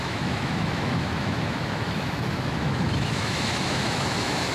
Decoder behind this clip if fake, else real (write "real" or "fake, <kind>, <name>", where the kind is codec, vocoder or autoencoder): fake, autoencoder, DAC-VAE